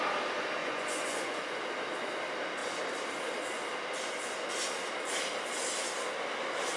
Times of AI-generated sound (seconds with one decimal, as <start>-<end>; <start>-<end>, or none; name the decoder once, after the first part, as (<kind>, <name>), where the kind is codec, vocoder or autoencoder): 0.6-1.6 (vocoder, Vocos)

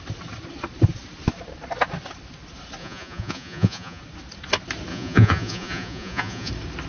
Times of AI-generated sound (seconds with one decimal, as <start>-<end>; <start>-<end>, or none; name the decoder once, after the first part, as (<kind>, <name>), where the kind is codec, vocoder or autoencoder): 2.8-4.0 (vocoder, Vocos); 4.9-6.5

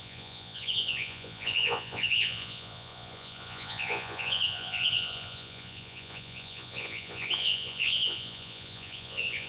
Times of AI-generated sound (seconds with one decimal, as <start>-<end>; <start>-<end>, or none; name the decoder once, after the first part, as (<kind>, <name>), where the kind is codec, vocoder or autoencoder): 0.0-9.5 (vocoder, Vocos)